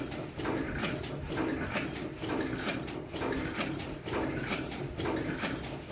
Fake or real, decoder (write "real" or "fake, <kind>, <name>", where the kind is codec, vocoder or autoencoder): real